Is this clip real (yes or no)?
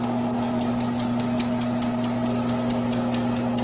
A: yes